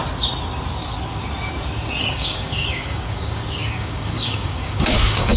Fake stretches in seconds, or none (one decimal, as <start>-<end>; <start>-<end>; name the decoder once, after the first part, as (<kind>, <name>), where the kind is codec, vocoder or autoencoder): 2.0-5.4 (codec, DAC)